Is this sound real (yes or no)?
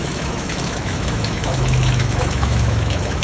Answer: no